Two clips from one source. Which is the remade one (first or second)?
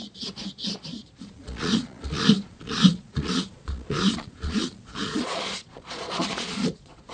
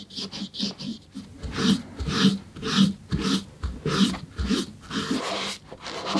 first